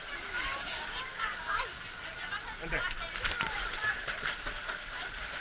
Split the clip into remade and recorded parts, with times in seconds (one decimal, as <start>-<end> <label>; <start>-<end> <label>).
0.0-0.6 recorded; 0.6-1.7 remade; 1.7-5.4 recorded